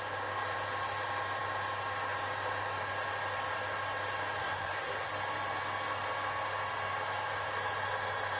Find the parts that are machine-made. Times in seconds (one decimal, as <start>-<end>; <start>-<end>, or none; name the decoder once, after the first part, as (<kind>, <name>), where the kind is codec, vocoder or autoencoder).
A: 4.4-5.1 (codec, SNAC)